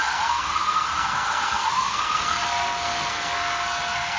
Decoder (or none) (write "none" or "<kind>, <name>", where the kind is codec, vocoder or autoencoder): codec, SNAC